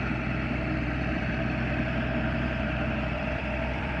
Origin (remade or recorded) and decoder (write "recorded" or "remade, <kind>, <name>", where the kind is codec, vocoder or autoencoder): remade, vocoder, BigVGAN v2